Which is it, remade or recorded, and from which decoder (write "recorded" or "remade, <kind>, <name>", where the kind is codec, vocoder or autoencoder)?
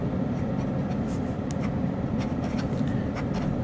recorded